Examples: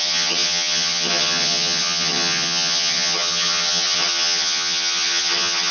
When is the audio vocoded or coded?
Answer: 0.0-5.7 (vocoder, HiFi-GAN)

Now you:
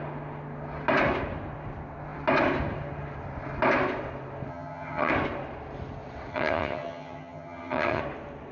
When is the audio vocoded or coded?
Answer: 4.5-5.1 (vocoder, HiFi-GAN); 6.3-8.0

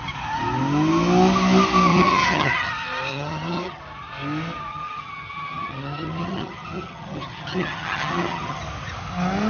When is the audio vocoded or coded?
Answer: 1.9-2.7 (vocoder, HiFi-GAN); 3.1-3.8; 4.7-8.6

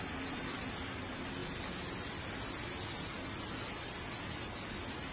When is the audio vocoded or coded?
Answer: none